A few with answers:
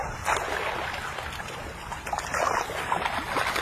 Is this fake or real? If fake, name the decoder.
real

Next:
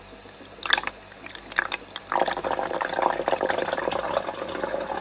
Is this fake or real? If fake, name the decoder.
real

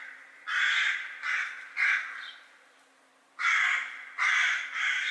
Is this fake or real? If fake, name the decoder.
fake, vocoder, BigVGAN v2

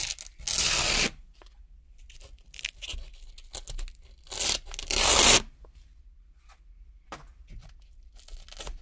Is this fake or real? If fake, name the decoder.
real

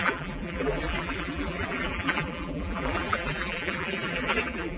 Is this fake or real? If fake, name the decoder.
fake, vocoder, BigVGAN v2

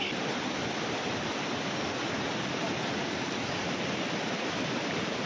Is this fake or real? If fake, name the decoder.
real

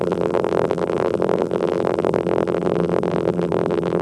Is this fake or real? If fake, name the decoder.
fake, vocoder, BigVGAN v2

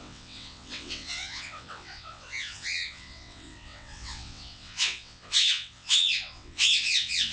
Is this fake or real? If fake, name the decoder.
fake, vocoder, WaveNeXt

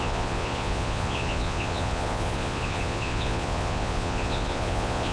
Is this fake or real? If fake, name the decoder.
fake, vocoder, Vocos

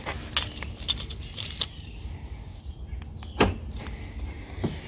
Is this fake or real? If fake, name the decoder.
real